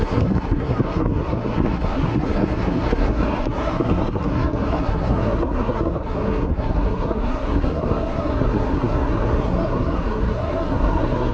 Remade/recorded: remade